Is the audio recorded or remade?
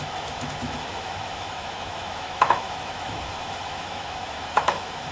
remade